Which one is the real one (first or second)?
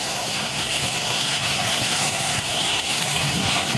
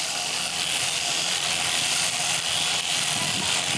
second